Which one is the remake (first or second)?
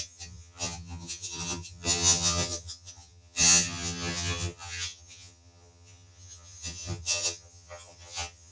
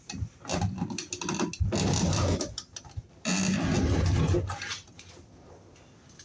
first